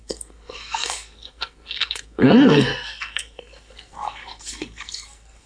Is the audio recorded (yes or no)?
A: no